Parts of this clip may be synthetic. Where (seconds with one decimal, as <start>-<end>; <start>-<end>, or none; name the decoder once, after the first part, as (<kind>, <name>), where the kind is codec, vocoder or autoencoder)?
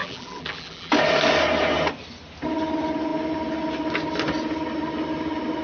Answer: 0.0-0.9 (vocoder, BigVGAN v2)